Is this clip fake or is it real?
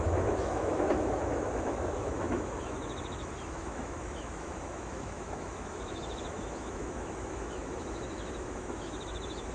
fake